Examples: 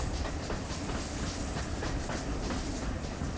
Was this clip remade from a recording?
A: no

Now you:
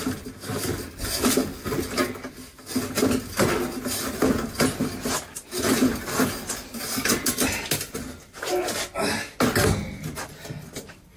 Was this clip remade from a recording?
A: no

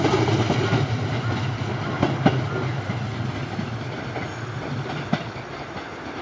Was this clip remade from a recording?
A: no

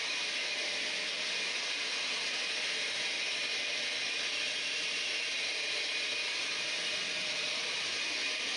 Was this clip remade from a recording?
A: no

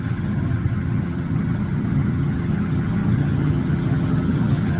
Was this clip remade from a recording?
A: yes